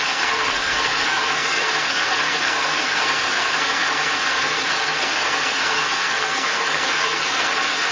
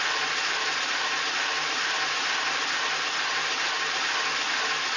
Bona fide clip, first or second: second